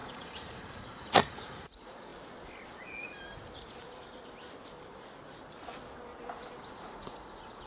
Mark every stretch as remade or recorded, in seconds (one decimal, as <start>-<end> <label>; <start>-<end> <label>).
0.0-2.1 remade; 2.1-6.7 recorded; 6.7-7.7 remade